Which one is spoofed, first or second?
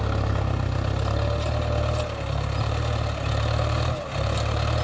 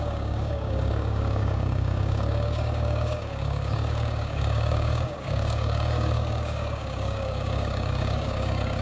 second